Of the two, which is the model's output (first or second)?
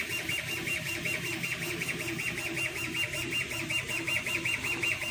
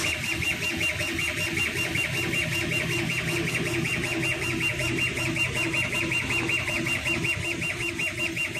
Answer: first